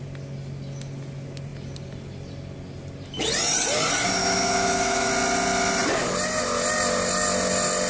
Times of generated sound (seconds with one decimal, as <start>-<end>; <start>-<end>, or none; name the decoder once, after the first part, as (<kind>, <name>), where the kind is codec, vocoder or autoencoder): 4.2-5.1 (autoencoder, DAC-VAE)